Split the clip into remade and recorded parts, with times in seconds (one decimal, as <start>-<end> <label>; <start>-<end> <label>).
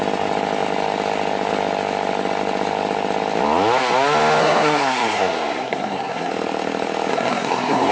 0.0-4.4 recorded; 4.4-6.3 remade; 6.3-7.1 recorded; 7.1-7.9 remade